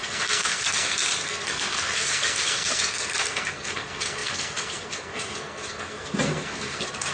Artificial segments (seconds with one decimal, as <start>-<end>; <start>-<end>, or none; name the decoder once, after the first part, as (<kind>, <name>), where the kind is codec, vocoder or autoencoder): 0.0-7.1 (codec, SNAC)